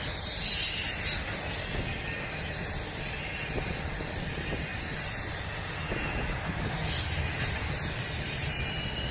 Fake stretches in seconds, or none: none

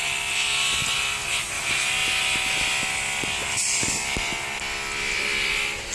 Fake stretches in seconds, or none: none

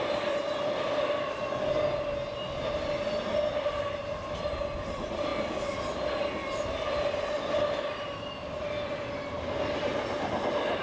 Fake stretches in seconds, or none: none

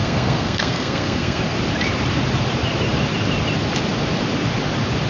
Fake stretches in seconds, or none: 0.0-1.4 (codec, SNAC)

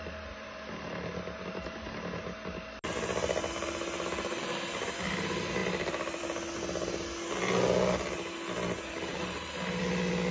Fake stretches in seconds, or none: none

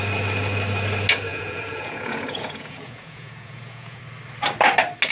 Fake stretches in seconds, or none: 1.3-4.0 (vocoder, Vocos)